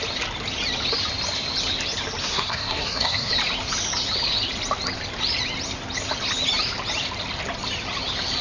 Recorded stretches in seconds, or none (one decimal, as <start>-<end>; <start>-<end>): 0.0-2.2; 3.3-8.4